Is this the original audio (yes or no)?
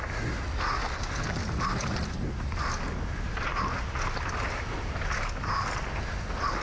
yes